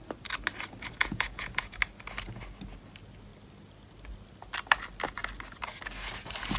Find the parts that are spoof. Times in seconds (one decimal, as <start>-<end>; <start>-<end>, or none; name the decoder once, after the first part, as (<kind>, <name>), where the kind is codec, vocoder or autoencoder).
1.0-1.8 (vocoder, Vocos)